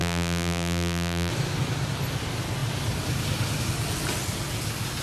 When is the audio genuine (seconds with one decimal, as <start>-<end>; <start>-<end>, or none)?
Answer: 1.3-5.0